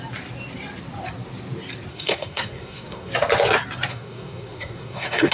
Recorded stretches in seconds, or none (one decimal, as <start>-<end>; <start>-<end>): 0.0-1.9; 3.1-3.9